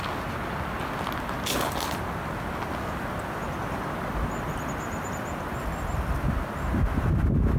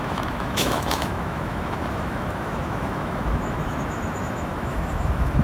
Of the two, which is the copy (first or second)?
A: second